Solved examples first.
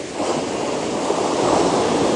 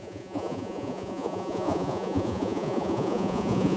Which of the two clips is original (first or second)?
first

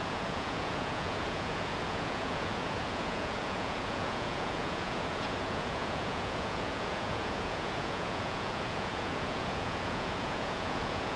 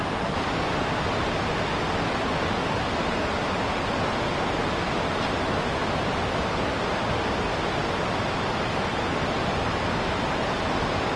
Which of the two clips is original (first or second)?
second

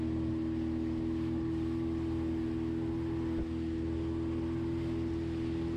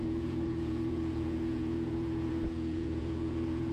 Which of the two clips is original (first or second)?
first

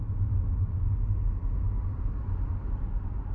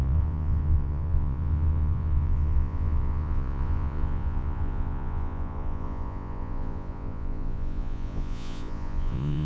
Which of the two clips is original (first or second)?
first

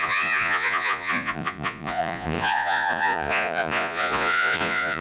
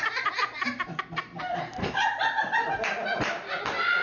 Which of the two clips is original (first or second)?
second